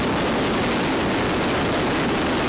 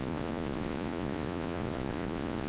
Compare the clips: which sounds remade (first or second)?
second